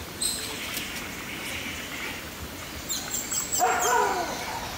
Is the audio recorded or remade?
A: remade